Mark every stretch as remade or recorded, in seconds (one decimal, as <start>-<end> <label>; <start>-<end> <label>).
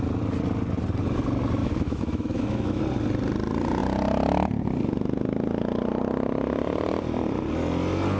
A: 0.0-1.6 recorded; 1.6-2.8 remade; 2.8-8.2 recorded